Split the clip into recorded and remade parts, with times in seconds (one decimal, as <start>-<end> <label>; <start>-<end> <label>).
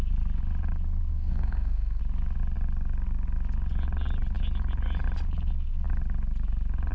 0.0-1.1 recorded; 1.1-2.0 remade; 2.0-6.9 recorded